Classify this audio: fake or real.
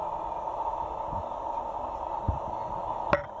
real